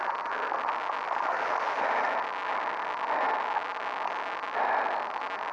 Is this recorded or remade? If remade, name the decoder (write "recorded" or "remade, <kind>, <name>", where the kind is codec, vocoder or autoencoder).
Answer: recorded